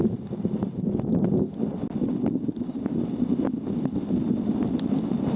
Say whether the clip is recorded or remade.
recorded